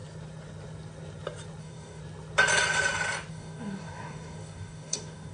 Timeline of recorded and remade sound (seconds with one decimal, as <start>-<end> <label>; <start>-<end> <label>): 0.0-1.6 recorded; 1.6-2.0 remade; 2.0-3.3 recorded; 3.3-5.3 remade